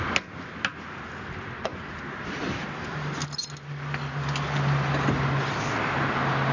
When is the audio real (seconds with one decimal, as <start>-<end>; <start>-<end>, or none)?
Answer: 0.0-6.5